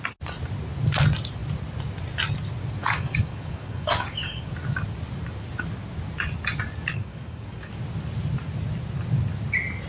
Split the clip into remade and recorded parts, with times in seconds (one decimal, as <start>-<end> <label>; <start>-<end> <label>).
0.0-2.8 recorded; 2.8-4.5 remade; 4.5-6.9 recorded; 6.9-7.7 remade; 7.7-9.9 recorded